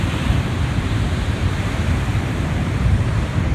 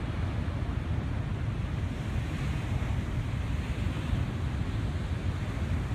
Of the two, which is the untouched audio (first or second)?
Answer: second